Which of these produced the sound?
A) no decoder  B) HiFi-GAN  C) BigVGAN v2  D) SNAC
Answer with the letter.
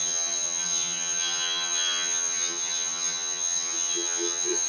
B